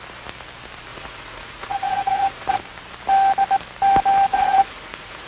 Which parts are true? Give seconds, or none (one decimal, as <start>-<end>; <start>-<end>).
0.0-0.9; 2.6-4.3